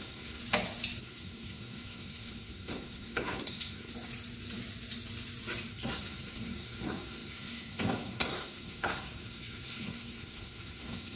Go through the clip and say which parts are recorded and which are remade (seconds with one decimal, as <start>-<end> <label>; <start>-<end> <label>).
0.0-0.4 remade; 0.4-1.0 recorded; 1.0-3.9 remade; 3.9-5.7 recorded; 5.7-11.2 remade